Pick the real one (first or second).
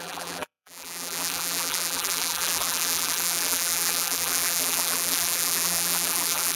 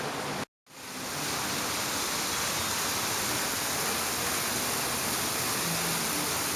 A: second